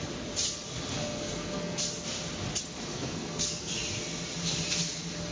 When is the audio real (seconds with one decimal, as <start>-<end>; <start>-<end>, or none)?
0.0-0.9; 1.8-2.9; 3.7-5.3